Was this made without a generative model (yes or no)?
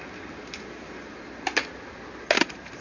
yes